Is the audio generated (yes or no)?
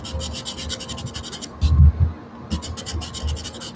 no